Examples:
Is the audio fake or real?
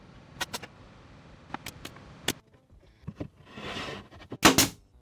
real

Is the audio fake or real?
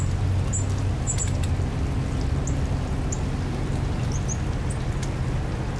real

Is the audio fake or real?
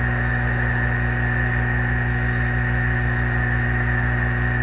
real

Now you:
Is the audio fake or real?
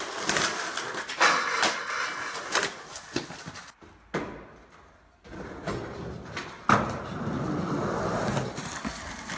real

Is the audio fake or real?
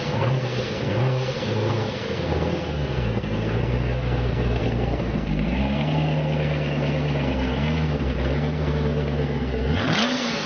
fake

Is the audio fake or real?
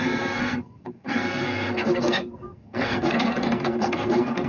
fake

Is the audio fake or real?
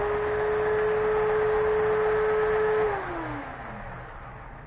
real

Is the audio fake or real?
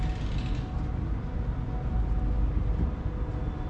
real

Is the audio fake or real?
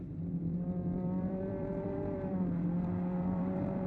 fake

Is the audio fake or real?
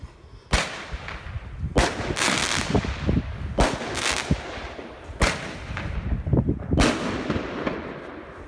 real